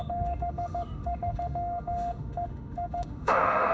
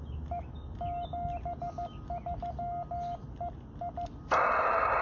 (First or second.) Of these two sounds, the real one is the second